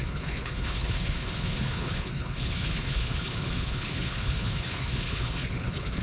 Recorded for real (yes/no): no